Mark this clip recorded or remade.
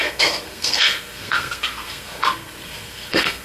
remade